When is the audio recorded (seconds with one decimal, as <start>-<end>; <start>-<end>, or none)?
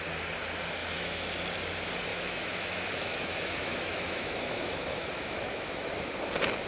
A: 0.0-0.8; 1.3-2.1; 6.1-6.7